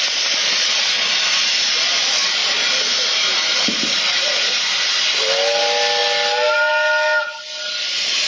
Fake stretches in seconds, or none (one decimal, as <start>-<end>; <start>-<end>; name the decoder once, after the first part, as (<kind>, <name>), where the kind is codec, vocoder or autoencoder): none